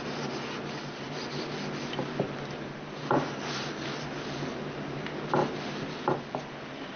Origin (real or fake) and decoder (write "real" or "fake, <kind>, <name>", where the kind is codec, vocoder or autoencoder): real